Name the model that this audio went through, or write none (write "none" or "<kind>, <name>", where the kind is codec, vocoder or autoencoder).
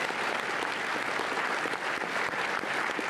none